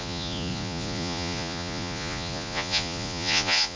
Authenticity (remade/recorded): remade